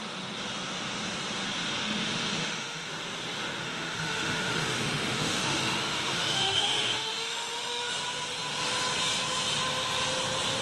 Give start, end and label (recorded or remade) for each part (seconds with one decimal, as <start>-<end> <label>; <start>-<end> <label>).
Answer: 0.0-1.8 recorded; 1.8-2.9 remade; 2.9-3.6 recorded; 3.6-7.9 remade; 7.9-10.6 recorded